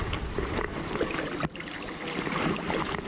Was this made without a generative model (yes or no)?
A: yes